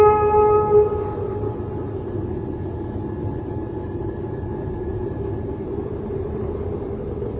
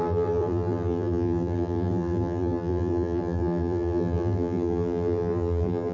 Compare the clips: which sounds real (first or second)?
first